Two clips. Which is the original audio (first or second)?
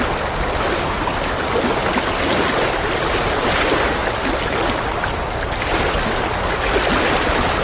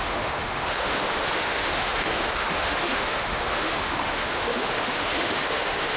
first